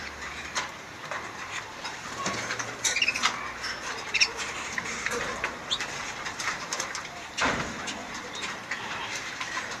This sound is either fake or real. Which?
fake